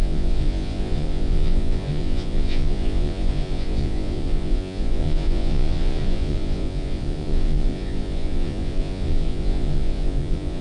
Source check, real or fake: fake